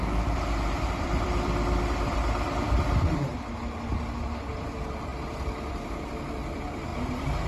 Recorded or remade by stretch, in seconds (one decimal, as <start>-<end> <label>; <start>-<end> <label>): 0.0-3.3 remade; 3.3-4.5 recorded; 4.5-6.9 remade; 6.9-7.5 recorded